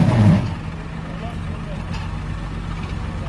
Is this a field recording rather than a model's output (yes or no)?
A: yes